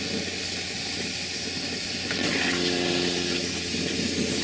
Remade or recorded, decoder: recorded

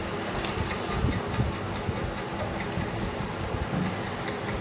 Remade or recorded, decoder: recorded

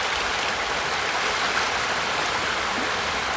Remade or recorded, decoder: recorded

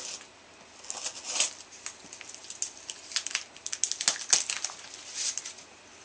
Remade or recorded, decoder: recorded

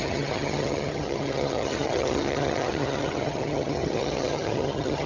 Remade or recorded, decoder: remade, vocoder, HiFi-GAN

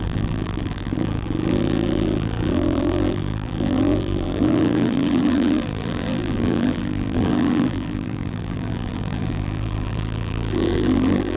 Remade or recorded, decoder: remade, vocoder, BigVGAN v2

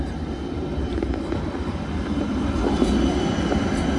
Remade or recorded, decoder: remade, vocoder, BigVGAN v2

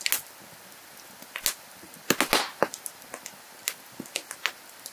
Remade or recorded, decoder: recorded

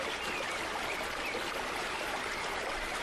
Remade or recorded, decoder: recorded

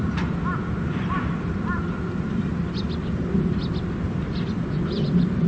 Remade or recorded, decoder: recorded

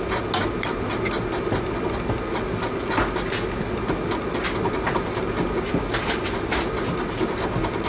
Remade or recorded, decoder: recorded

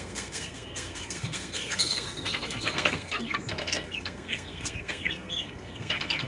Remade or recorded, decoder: remade, codec, SNAC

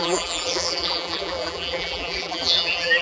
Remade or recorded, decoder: remade, vocoder, BigVGAN v2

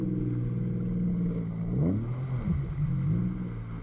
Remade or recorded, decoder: recorded